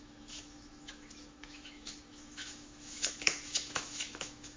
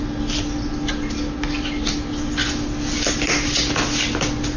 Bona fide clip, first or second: second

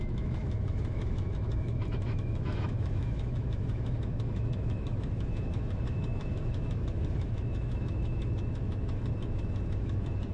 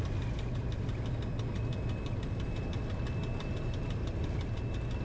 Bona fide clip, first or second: second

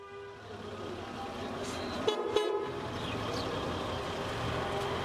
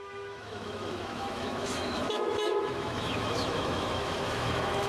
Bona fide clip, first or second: first